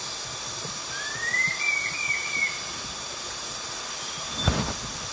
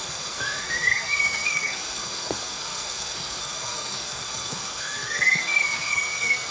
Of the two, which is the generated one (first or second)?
second